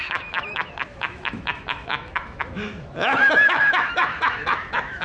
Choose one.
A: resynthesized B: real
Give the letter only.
A